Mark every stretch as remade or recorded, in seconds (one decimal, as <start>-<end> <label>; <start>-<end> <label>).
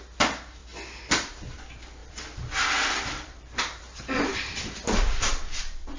0.0-2.0 recorded; 2.0-5.6 remade; 5.6-6.0 recorded